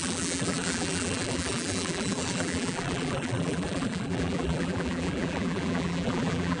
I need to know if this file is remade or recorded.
remade